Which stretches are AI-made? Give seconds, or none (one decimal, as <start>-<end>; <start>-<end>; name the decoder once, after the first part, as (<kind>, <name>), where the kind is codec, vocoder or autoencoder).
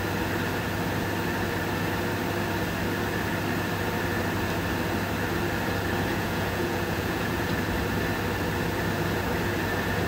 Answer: 6.1-7.5 (vocoder, Vocos)